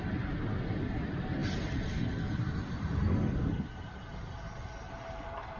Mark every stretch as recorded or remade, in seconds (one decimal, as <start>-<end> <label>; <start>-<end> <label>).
0.0-5.6 recorded